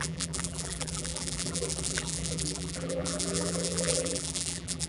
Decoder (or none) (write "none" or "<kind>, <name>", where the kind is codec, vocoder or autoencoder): vocoder, BigVGAN v2